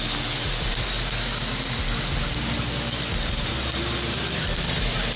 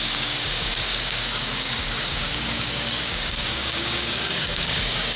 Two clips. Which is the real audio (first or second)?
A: first